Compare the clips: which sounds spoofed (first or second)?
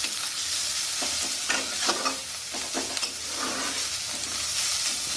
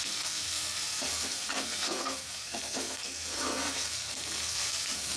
second